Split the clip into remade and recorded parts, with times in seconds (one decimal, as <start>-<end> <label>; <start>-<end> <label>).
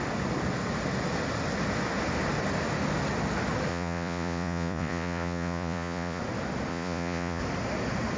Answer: 0.0-3.7 recorded; 3.7-6.2 remade; 6.2-6.7 recorded; 6.7-7.4 remade; 7.4-8.2 recorded